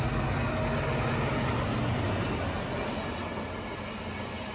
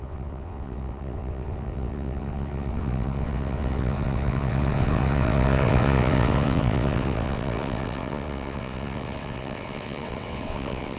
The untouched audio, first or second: first